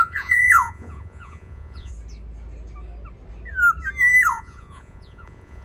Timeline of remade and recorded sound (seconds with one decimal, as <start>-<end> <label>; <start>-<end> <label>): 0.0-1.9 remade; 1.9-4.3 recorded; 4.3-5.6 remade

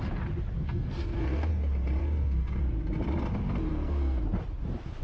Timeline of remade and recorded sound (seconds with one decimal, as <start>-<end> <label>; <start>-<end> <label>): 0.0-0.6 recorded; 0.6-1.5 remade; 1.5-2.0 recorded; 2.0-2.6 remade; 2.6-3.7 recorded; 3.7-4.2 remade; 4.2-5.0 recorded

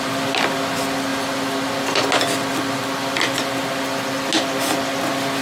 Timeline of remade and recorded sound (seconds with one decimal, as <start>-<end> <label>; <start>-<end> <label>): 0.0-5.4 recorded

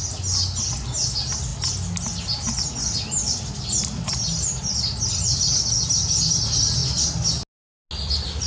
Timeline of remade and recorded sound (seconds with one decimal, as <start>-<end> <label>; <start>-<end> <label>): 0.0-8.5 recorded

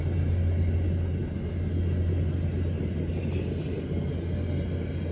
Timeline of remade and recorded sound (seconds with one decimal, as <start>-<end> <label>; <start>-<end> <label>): 0.0-5.1 recorded

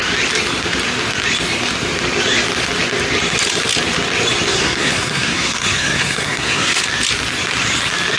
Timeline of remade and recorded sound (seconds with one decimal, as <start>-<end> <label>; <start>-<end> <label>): 0.0-4.5 recorded; 4.5-6.8 remade; 6.8-8.2 recorded